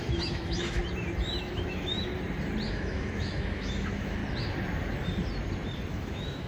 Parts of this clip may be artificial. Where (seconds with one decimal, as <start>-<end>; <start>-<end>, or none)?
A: 0.0-0.8; 1.4-2.1; 2.7-4.2; 5.9-6.5